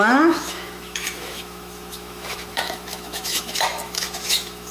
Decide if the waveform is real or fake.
fake